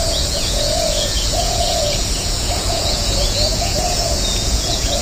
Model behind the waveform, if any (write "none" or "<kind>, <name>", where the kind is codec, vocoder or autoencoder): vocoder, Vocos